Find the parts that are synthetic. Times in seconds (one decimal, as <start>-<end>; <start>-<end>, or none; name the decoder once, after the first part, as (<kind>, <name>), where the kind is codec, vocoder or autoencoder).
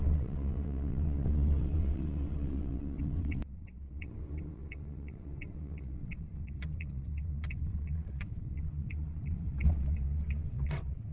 0.0-11.1 (vocoder, WaveNeXt)